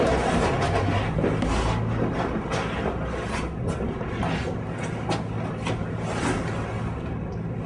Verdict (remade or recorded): recorded